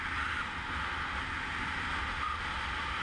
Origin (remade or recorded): recorded